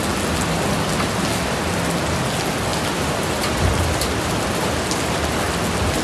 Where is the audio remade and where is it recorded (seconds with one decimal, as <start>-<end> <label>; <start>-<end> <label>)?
0.0-6.0 recorded